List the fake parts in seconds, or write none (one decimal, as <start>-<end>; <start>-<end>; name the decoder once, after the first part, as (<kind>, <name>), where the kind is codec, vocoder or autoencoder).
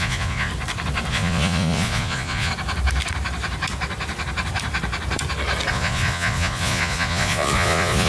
0.0-0.5 (vocoder, Vocos); 1.1-2.5; 5.7-8.1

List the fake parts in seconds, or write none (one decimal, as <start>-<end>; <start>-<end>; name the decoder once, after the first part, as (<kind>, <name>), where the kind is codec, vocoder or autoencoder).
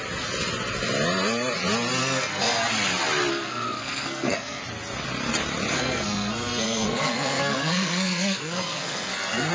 2.0-2.7 (codec, SNAC); 3.3-4.6; 5.7-9.5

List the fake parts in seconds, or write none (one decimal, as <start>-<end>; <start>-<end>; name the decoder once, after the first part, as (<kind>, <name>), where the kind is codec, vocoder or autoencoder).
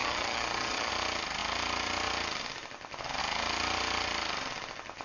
0.0-0.9 (vocoder, HiFi-GAN)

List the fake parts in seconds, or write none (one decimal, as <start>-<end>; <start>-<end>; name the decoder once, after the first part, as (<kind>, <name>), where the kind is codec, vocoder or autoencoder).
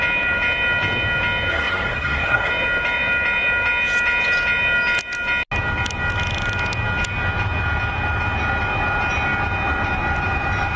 1.5-2.5 (codec, SNAC)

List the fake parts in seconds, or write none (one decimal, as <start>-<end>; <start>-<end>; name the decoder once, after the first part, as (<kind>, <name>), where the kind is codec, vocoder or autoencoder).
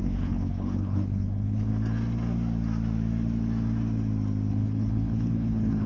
0.0-1.7 (codec, HILCodec); 4.5-5.9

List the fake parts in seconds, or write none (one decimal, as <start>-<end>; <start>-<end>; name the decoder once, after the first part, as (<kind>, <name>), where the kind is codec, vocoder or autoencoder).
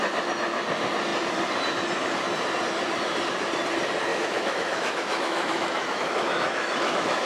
4.1-7.3 (autoencoder, DAC-VAE)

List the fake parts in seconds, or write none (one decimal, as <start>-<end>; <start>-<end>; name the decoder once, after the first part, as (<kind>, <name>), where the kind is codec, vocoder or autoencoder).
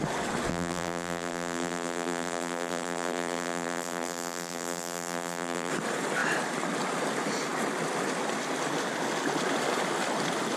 0.5-5.7 (vocoder, BigVGAN v2)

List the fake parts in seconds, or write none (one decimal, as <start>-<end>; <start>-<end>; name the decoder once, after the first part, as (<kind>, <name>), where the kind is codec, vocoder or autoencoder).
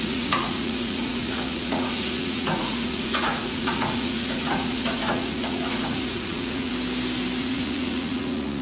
0.0-6.7 (vocoder, Vocos); 7.4-8.6